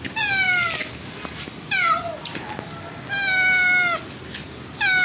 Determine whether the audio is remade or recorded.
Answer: recorded